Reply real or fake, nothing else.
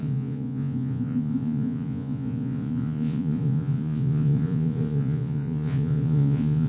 fake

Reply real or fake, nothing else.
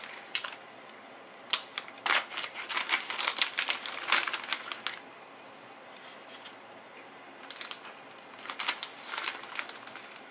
real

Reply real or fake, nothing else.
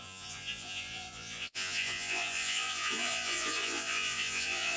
fake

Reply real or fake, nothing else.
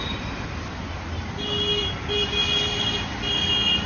real